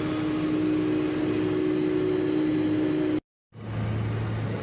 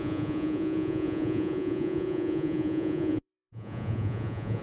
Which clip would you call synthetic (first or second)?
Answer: second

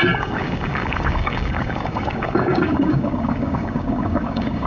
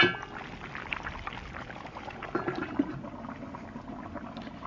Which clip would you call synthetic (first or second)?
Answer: first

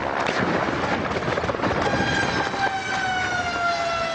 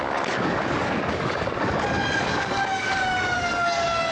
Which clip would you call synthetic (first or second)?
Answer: second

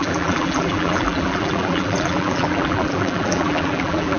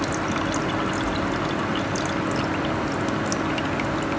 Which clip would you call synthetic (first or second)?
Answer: first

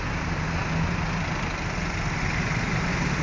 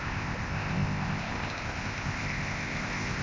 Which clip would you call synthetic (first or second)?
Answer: second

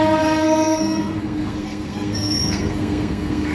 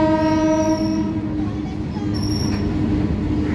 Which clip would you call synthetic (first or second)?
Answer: first